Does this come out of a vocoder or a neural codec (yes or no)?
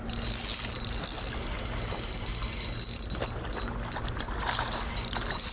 no